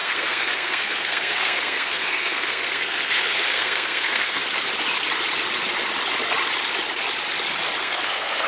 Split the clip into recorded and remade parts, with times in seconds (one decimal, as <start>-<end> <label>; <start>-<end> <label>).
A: 0.0-4.4 remade; 4.4-7.8 recorded; 7.8-8.5 remade

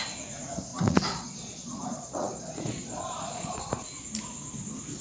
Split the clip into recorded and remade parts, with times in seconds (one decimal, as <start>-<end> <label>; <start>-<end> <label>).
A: 0.0-0.7 recorded; 0.7-3.6 remade; 3.6-5.0 recorded

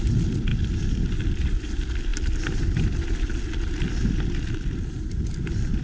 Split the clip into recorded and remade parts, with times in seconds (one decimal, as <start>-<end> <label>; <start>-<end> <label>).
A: 0.0-5.8 recorded

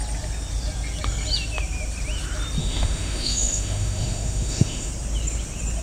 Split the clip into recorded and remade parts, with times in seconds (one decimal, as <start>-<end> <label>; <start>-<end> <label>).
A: 0.0-2.6 recorded; 2.6-4.9 remade; 4.9-5.8 recorded

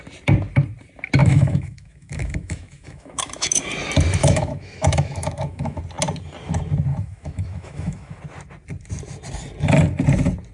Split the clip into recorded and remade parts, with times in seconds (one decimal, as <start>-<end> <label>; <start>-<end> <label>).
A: 0.0-1.2 recorded; 1.2-3.6 remade; 3.6-4.2 recorded; 4.2-5.8 remade; 5.8-6.9 recorded; 6.9-8.2 remade; 8.2-10.5 recorded